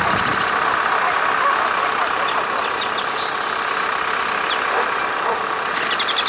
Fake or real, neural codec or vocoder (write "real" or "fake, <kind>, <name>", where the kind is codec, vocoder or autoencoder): real